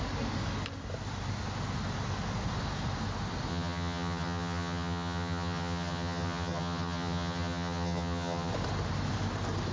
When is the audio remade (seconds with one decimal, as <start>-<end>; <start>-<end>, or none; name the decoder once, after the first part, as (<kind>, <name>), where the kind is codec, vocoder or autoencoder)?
3.5-8.5 (vocoder, HiFi-GAN)

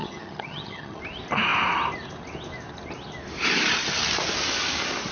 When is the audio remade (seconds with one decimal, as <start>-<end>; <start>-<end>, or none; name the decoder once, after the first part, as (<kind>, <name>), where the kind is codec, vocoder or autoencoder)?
0.0-1.0 (vocoder, HiFi-GAN)